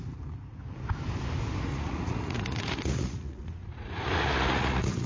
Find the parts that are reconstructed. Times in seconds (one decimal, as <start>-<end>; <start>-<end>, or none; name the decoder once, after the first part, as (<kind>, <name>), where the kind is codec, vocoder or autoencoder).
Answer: 1.7-5.1 (vocoder, Vocos)